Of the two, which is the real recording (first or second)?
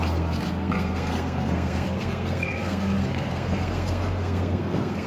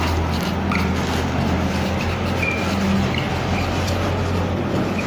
second